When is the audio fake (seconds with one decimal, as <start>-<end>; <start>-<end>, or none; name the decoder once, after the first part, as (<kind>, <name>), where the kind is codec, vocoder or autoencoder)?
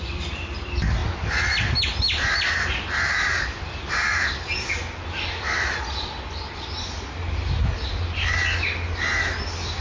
none